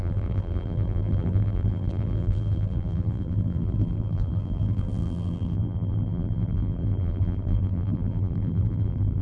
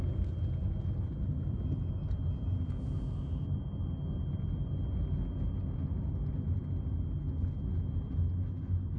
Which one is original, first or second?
second